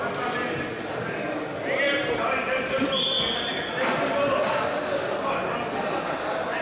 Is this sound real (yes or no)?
yes